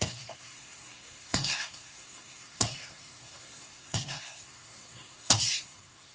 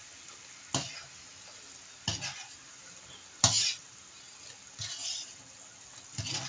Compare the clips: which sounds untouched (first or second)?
second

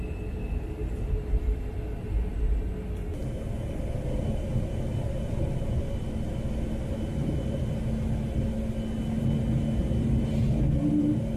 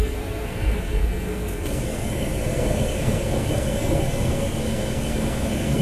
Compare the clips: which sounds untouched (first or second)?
first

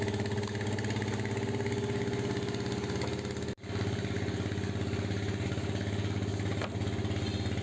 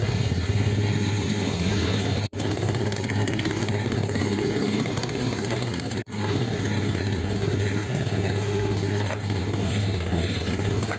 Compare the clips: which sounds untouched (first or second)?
first